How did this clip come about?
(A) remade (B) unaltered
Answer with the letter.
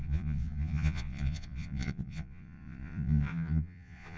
A